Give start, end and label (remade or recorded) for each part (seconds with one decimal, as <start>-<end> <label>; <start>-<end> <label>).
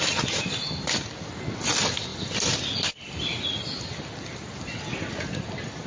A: 0.0-5.9 recorded